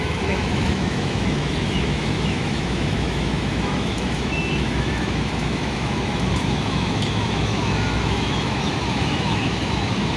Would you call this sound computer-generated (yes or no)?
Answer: yes